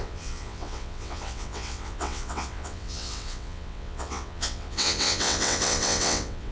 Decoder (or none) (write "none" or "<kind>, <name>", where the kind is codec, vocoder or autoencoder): vocoder, WaveNeXt